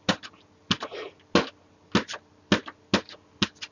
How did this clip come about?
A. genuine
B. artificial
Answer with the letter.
A